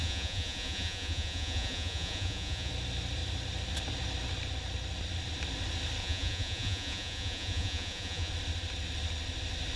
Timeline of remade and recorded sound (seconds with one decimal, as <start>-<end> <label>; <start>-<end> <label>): 0.0-2.7 remade; 2.7-6.0 recorded; 6.0-8.3 remade; 8.3-9.8 recorded